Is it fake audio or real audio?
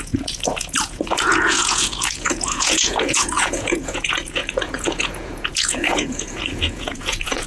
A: fake